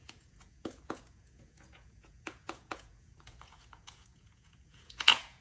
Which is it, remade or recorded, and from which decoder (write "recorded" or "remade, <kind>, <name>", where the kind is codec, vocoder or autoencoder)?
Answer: remade, vocoder, Vocos